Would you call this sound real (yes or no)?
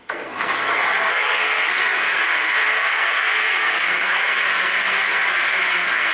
no